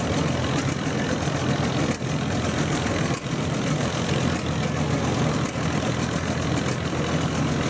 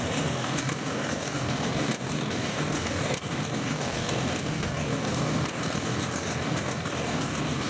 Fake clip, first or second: second